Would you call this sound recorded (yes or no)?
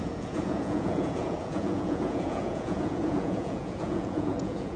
no